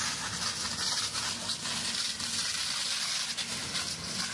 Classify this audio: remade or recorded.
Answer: recorded